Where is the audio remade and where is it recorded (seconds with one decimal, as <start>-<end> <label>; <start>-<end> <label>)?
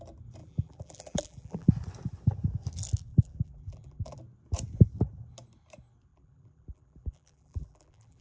0.0-0.4 recorded; 0.4-1.7 remade; 1.7-3.1 recorded; 3.1-4.2 remade; 4.2-6.1 recorded; 6.1-8.2 remade